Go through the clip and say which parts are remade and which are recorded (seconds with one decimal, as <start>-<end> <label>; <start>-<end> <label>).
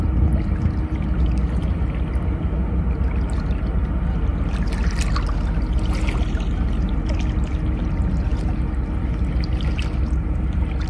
0.0-10.9 recorded